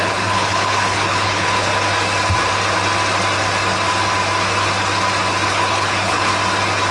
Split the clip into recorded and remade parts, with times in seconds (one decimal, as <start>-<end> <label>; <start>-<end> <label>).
0.0-1.7 remade; 1.7-5.5 recorded; 5.5-6.3 remade; 6.3-6.9 recorded

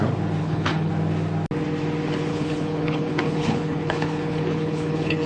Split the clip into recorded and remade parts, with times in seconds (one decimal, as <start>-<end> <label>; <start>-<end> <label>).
0.0-0.4 recorded; 0.4-0.9 remade; 0.9-2.3 recorded; 2.3-5.3 remade